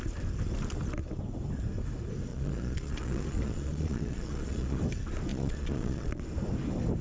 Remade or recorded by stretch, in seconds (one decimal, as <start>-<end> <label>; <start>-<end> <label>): 0.0-2.3 recorded; 2.3-4.8 remade; 4.8-5.3 recorded; 5.3-6.2 remade; 6.2-7.0 recorded